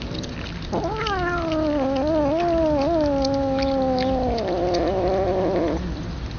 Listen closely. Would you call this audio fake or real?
real